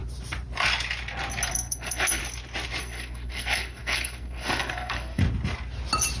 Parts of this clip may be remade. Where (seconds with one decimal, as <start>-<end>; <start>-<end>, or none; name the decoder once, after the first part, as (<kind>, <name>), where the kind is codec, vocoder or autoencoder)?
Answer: 1.5-2.2 (codec, SNAC); 2.8-5.2